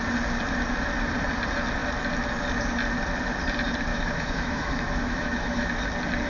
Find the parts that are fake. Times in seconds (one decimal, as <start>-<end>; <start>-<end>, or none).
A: 3.9-5.7